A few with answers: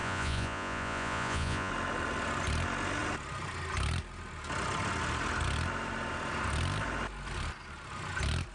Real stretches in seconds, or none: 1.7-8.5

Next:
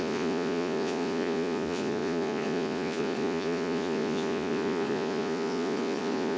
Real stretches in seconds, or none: none

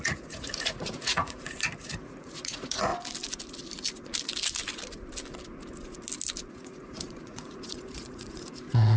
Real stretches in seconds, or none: 2.9-6.5

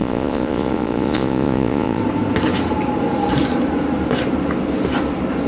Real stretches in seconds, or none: 2.0-5.5

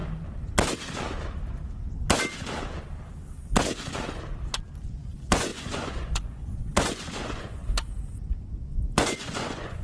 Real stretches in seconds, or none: 0.0-4.8; 7.6-8.3